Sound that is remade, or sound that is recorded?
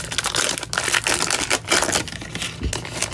recorded